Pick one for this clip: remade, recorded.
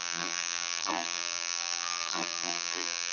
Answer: remade